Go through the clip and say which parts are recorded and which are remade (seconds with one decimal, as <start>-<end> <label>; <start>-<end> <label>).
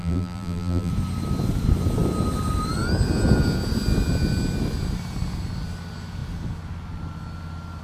0.0-0.9 remade; 0.9-7.8 recorded